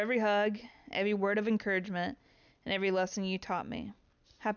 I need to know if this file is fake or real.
real